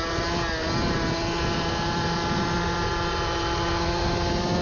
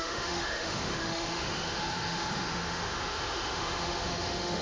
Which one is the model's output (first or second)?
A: second